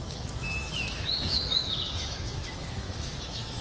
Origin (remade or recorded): remade